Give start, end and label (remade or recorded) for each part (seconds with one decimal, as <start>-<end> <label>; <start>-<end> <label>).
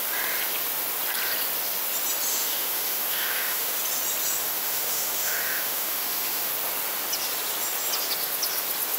0.0-2.3 recorded; 2.3-3.7 remade; 3.7-4.4 recorded; 4.4-6.5 remade; 6.5-9.0 recorded